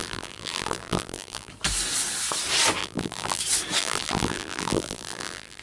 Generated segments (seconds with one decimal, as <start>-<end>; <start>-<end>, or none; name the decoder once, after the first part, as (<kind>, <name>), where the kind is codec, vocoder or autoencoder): 0.0-1.5 (vocoder, BigVGAN v2); 2.8-3.4; 3.8-5.6